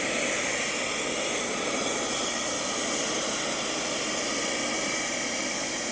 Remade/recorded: recorded